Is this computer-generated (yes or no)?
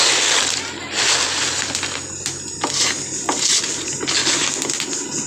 no